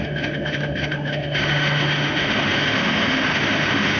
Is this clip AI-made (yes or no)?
yes